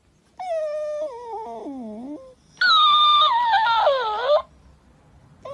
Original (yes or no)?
yes